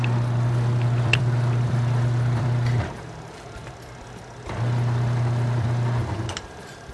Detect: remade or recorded remade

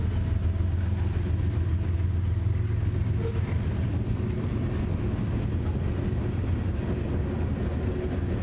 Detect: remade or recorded recorded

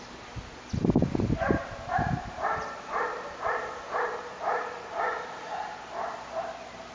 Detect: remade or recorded recorded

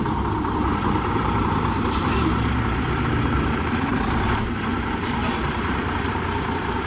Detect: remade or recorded remade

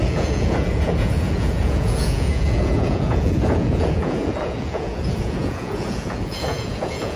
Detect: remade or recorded remade